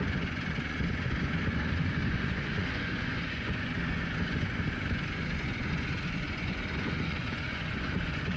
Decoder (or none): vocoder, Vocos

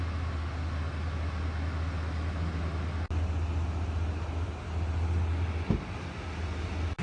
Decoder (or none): none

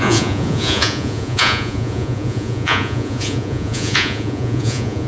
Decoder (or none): vocoder, Vocos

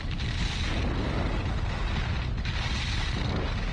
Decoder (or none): none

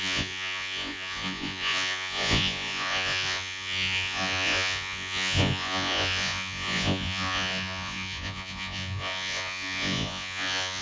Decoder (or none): vocoder, Vocos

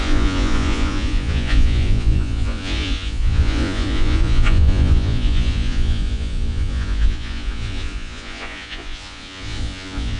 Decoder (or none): vocoder, Vocos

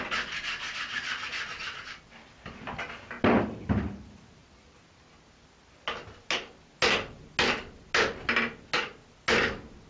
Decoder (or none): none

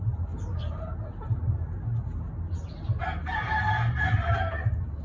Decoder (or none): none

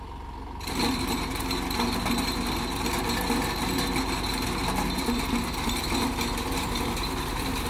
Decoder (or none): none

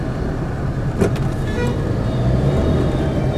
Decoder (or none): none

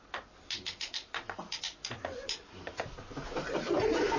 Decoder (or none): none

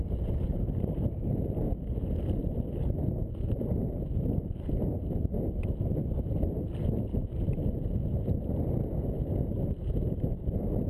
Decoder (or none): none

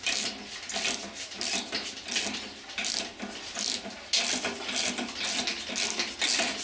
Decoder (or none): none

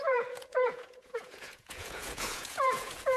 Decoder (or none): vocoder, Vocos